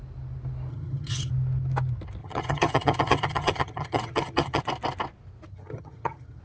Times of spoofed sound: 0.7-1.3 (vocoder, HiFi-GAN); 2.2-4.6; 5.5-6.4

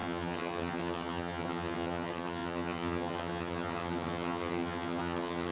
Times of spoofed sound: 0.0-5.5 (vocoder, HiFi-GAN)